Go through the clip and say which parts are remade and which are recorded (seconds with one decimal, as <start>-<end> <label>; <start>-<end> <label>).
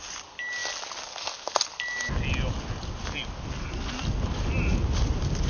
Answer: 0.0-5.5 recorded